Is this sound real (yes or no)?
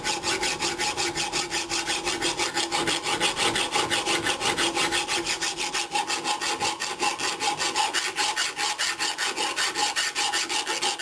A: yes